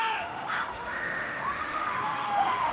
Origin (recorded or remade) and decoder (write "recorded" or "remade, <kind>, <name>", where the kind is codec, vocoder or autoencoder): remade, autoencoder, DAC-VAE